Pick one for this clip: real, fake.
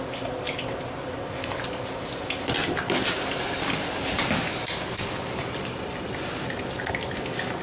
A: real